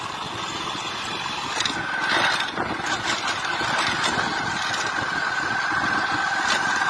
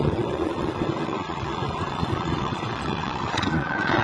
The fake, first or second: second